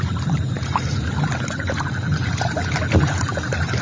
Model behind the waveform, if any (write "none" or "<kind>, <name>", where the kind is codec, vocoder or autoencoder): none